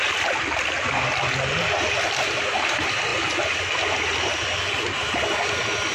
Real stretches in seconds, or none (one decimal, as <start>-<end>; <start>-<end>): 0.0-5.9